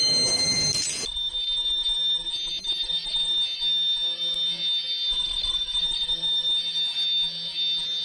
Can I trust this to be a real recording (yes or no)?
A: yes